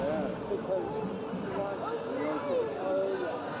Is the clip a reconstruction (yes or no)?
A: no